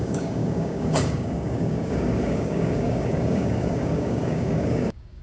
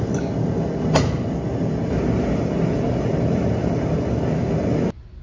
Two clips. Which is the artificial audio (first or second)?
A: first